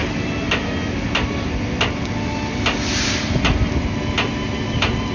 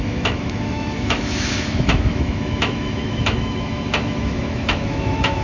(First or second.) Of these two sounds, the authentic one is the first